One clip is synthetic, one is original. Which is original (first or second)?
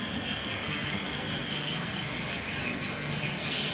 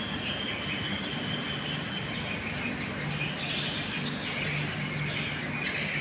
second